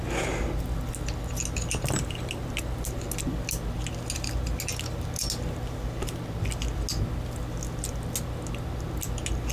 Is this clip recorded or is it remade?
recorded